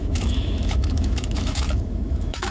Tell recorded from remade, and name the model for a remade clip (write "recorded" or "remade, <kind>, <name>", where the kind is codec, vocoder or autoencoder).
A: remade, autoencoder, DAC-VAE